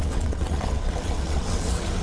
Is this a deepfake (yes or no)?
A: yes